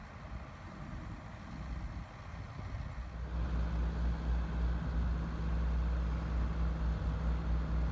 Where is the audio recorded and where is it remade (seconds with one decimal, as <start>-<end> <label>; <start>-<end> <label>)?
0.0-7.9 recorded